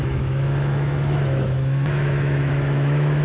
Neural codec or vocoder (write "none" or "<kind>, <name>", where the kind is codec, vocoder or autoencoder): autoencoder, DAC-VAE